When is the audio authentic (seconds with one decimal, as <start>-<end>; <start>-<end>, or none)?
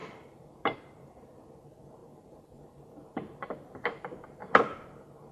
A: 1.6-2.0